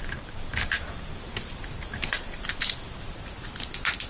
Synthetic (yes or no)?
no